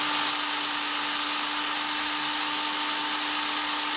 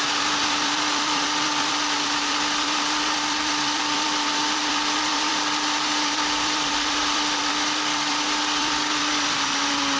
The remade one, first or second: second